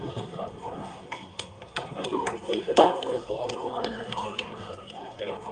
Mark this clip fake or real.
fake